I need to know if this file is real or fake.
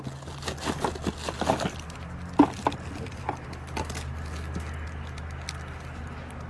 real